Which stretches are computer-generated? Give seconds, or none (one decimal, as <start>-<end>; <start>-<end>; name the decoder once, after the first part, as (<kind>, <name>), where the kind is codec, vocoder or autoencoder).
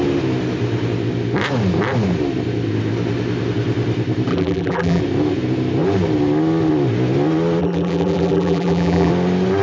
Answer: 4.3-5.0 (vocoder, BigVGAN v2); 7.6-9.1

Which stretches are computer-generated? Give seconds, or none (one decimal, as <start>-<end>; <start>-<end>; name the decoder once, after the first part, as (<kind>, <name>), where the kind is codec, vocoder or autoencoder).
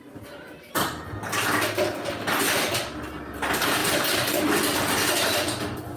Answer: none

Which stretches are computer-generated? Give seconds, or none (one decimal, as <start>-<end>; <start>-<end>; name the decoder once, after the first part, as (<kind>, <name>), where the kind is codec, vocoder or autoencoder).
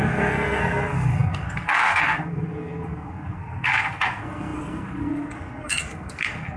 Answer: 0.0-6.6 (codec, SNAC)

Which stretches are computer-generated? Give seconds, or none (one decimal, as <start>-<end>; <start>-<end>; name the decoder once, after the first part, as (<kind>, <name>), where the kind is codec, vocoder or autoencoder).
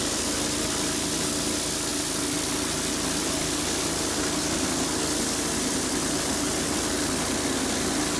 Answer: none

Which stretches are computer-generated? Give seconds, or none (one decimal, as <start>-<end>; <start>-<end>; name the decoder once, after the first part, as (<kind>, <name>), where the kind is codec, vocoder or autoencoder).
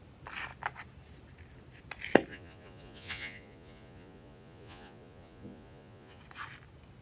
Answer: 2.3-6.2 (vocoder, Vocos)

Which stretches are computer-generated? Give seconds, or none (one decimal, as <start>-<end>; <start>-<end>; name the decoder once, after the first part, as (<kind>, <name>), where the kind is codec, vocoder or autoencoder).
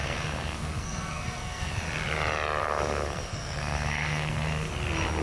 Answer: 0.0-1.7 (codec, SNAC); 2.6-4.7